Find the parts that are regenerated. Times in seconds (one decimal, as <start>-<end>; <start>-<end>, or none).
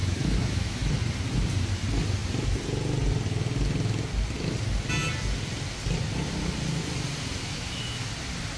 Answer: 0.0-0.9; 7.4-8.1